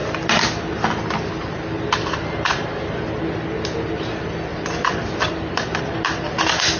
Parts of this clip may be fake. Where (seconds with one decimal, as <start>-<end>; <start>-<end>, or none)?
4.5-6.2